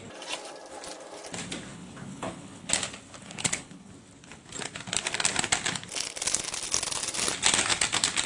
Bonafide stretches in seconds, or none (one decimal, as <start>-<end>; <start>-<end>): 0.0-1.7; 2.7-3.2; 3.9-8.3